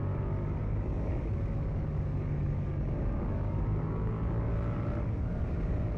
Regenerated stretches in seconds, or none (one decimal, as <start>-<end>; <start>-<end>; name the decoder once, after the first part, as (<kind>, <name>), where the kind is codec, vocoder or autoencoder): 0.0-6.0 (codec, DAC)